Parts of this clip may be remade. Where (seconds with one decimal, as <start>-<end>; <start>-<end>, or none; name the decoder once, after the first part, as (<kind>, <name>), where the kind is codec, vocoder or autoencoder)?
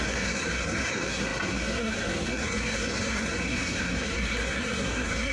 0.0-5.3 (codec, SNAC)